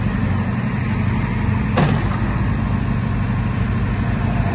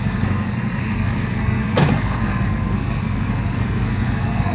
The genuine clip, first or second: first